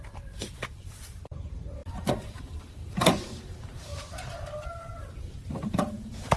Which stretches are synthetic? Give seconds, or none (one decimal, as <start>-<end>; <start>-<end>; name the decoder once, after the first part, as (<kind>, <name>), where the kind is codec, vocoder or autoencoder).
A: 0.0-3.9 (vocoder, BigVGAN v2); 5.7-6.4